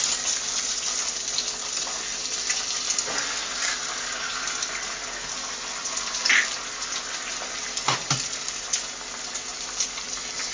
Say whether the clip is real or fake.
real